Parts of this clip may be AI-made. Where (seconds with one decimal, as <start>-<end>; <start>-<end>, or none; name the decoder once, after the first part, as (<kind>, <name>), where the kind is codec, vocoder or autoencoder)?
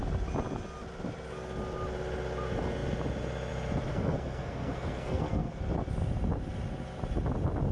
3.9-5.6 (codec, SNAC)